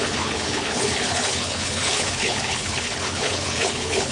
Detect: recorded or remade remade